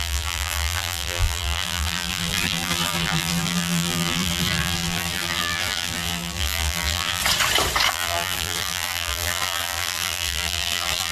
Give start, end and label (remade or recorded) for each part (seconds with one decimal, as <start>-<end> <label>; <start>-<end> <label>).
0.0-7.2 remade; 7.2-7.9 recorded; 7.9-11.1 remade